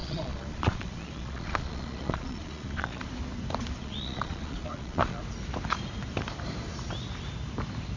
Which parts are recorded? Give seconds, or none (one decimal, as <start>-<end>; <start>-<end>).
3.0-3.8; 5.2-8.0